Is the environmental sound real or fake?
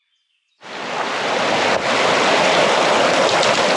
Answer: real